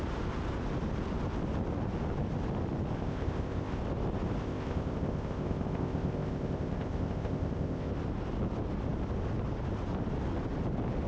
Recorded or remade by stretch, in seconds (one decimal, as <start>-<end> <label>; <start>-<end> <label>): 0.0-3.0 recorded; 3.0-3.8 remade; 3.8-4.4 recorded; 4.4-7.9 remade; 7.9-11.1 recorded